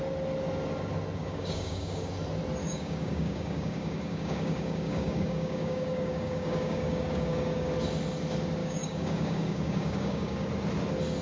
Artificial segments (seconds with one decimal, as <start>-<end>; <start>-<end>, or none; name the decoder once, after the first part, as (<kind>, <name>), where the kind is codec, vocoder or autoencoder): 1.2-2.1 (codec, DAC); 2.6-7.7; 8.6-10.5